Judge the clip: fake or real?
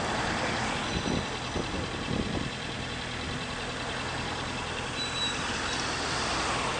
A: real